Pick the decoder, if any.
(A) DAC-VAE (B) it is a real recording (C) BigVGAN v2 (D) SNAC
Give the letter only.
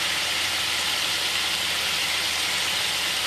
B